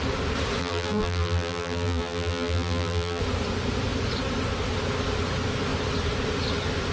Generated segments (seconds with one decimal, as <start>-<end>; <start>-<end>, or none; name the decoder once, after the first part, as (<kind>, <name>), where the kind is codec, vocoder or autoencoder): 0.6-3.2 (vocoder, BigVGAN v2)